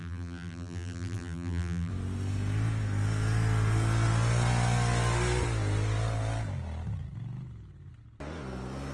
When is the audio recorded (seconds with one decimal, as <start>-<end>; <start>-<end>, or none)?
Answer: 1.9-8.9